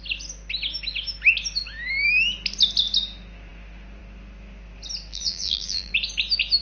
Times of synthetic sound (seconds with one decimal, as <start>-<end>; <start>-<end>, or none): 5.1-5.9